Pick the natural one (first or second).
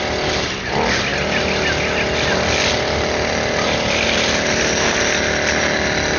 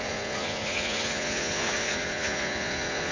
first